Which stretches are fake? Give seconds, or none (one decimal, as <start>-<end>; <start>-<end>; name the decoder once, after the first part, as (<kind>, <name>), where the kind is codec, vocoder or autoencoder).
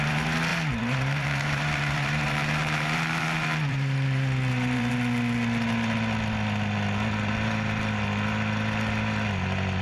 0.5-4.9 (vocoder, BigVGAN v2)